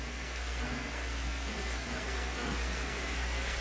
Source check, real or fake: fake